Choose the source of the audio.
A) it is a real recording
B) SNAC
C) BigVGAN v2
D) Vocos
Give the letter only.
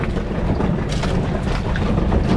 A